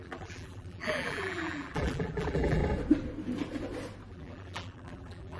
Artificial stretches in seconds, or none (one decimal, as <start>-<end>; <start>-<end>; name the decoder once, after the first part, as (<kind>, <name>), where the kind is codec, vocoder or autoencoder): 0.0-2.6 (vocoder, BigVGAN v2); 4.1-5.4